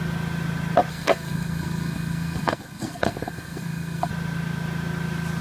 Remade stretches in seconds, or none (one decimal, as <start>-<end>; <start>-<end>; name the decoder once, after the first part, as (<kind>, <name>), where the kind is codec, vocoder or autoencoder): 0.9-4.1 (codec, SNAC)